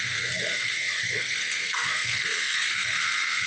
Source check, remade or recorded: remade